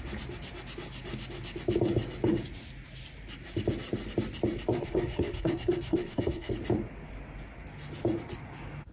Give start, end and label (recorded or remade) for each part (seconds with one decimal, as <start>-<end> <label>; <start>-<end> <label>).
0.0-4.7 recorded; 4.7-6.5 remade; 6.5-8.9 recorded